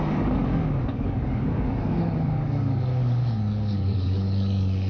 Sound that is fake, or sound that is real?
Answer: fake